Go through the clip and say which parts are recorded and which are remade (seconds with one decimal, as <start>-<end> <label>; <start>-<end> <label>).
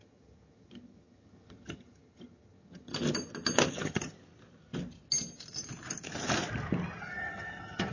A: 0.0-2.9 remade; 2.9-3.7 recorded; 3.7-4.2 remade; 4.2-7.0 recorded; 7.0-7.9 remade